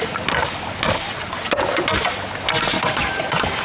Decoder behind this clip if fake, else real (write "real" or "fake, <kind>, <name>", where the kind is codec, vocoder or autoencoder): real